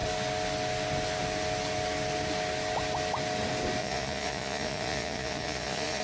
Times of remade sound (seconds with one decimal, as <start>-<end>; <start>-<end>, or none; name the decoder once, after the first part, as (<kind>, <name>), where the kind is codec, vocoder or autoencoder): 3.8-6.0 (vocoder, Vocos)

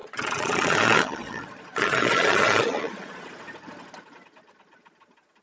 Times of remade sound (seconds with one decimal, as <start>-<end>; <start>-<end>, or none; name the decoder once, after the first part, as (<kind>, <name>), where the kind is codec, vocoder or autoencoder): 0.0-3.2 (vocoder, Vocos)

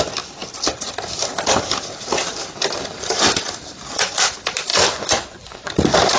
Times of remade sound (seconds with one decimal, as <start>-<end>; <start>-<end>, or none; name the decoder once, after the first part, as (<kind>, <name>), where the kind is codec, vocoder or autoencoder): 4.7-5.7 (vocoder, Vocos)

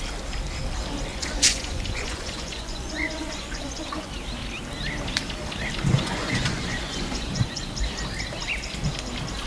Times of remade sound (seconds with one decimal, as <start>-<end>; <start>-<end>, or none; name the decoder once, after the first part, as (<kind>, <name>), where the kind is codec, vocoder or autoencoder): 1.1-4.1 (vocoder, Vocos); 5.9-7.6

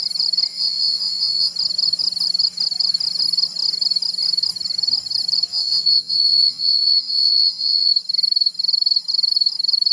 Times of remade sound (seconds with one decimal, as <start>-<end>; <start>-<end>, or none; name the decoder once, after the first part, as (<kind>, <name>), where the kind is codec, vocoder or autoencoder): 0.5-1.5 (vocoder, Vocos); 5.5-7.9